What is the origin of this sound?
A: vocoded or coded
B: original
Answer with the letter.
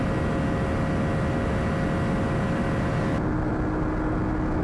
B